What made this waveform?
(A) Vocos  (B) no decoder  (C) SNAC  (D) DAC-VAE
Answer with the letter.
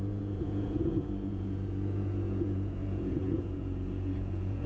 A